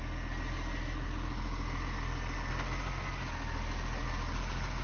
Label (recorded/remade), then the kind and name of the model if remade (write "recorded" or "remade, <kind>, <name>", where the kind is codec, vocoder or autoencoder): recorded